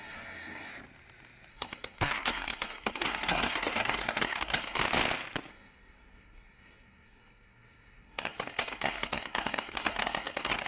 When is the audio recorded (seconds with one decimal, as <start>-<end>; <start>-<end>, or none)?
0.7-1.5; 4.8-5.5